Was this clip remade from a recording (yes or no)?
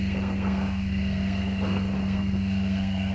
yes